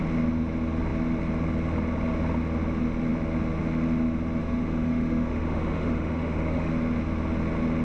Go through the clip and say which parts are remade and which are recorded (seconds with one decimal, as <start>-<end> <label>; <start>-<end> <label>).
0.0-4.4 recorded; 4.4-6.7 remade; 6.7-7.8 recorded

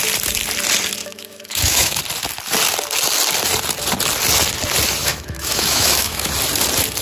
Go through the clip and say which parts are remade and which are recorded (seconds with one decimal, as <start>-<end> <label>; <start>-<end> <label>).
0.0-1.0 recorded; 1.0-2.0 remade; 2.0-5.0 recorded; 5.0-6.3 remade; 6.3-7.0 recorded

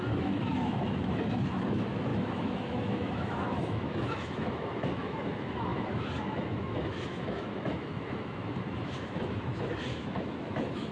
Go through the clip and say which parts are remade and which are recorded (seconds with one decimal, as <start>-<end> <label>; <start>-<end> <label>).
0.0-10.9 remade

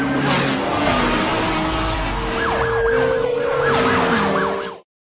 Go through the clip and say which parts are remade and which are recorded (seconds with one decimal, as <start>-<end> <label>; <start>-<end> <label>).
0.0-5.1 recorded

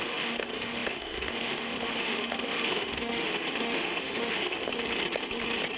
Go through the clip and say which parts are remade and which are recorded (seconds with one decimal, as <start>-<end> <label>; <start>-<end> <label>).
0.0-4.7 remade; 4.7-5.8 recorded

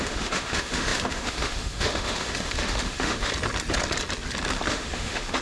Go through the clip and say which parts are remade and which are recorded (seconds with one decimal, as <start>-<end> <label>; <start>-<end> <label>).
0.0-3.3 remade; 3.3-4.7 recorded; 4.7-5.4 remade

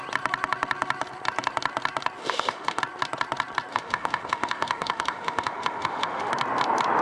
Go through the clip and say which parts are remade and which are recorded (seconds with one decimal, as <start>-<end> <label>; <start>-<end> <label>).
0.0-2.2 recorded; 2.2-2.8 remade; 2.8-3.7 recorded; 3.7-6.3 remade; 6.3-7.0 recorded